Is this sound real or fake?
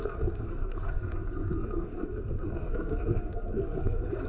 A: fake